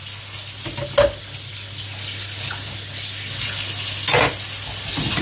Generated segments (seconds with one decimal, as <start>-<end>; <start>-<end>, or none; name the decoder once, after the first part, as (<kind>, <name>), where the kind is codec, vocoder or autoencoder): none